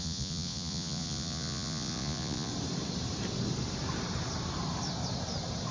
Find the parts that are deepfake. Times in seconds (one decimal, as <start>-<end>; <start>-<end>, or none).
0.0-2.5